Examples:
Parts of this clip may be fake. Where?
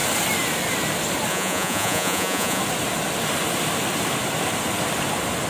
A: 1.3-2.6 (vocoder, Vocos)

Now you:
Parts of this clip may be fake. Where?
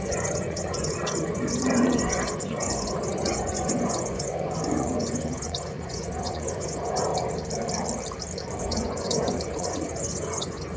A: 0.0-7.1 (vocoder, Vocos); 8.6-10.8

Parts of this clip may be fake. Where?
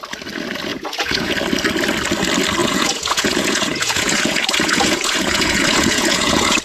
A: 0.7-1.3 (vocoder, Vocos); 2.6-6.6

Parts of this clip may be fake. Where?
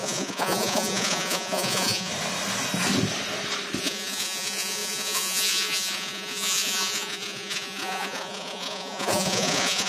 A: 0.0-2.1 (vocoder, Vocos); 3.8-9.9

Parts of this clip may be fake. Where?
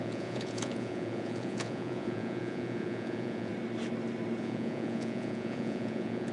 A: 0.0-3.5 (vocoder, Vocos); 4.4-6.3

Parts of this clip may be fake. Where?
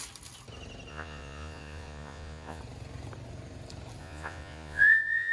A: 0.9-2.6 (vocoder, Vocos); 4.0-5.3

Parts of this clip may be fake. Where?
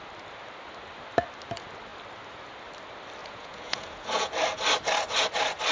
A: 3.2-4.3 (vocoder, Vocos)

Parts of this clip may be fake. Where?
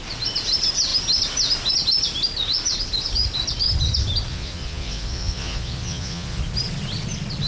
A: 4.3-6.4 (vocoder, Vocos)